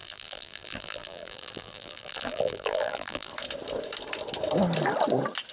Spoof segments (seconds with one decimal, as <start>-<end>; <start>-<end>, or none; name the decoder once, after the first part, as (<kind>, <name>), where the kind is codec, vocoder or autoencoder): 0.0-3.3 (vocoder, BigVGAN v2)